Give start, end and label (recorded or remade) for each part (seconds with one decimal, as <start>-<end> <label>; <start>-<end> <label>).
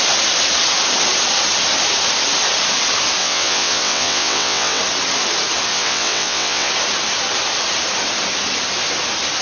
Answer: 0.0-3.2 recorded; 3.2-4.8 remade; 4.8-5.7 recorded; 5.7-6.7 remade; 6.7-9.4 recorded